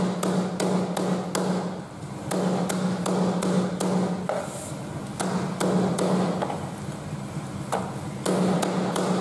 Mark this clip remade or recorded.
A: recorded